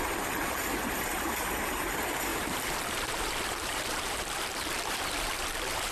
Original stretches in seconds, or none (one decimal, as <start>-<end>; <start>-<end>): none